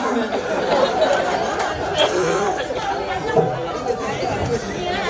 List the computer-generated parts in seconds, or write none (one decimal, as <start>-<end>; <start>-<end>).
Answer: none